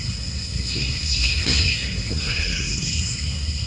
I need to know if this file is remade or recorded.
remade